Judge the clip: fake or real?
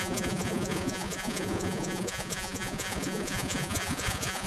fake